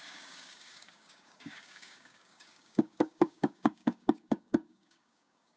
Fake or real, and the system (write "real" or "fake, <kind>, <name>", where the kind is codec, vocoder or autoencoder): fake, codec, DAC